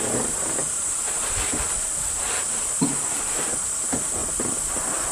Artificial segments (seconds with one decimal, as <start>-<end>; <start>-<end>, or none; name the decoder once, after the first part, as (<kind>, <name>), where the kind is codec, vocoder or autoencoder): none

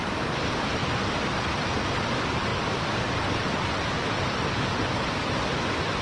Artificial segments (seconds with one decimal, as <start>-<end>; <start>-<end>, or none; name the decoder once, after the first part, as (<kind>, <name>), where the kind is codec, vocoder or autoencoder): none

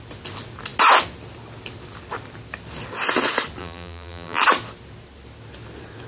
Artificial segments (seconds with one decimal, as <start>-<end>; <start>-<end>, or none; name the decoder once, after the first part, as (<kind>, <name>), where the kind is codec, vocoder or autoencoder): 3.6-4.4 (vocoder, BigVGAN v2)